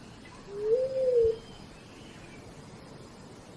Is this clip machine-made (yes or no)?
no